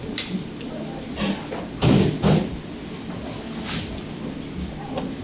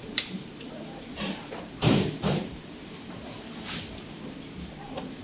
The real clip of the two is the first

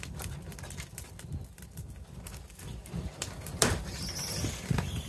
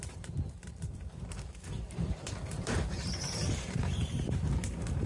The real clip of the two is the first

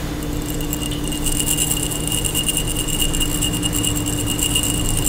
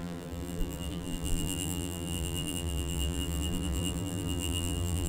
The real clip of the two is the first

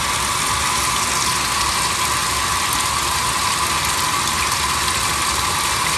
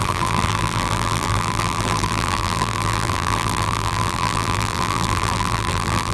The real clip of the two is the first